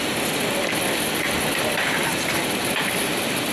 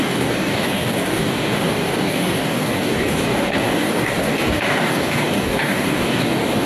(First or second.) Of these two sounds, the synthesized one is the second